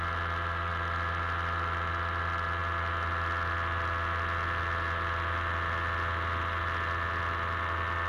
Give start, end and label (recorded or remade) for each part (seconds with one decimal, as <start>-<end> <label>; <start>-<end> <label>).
0.0-8.1 recorded